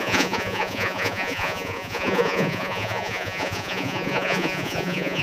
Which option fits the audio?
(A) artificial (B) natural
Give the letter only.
A